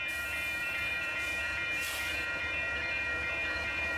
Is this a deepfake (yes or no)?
yes